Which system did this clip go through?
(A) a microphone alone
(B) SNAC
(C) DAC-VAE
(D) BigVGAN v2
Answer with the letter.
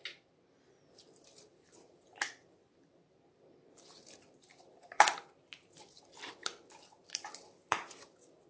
D